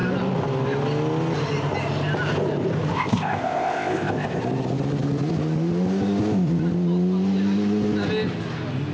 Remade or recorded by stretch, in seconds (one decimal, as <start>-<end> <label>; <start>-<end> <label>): 0.0-2.9 recorded; 2.9-4.4 remade; 4.4-8.9 recorded